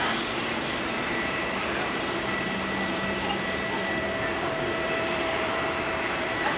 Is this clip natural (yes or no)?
no